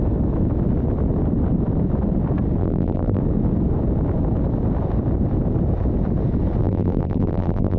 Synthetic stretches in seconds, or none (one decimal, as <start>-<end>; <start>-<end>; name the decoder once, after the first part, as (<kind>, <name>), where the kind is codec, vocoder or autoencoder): 2.6-3.2 (vocoder, BigVGAN v2); 6.6-7.8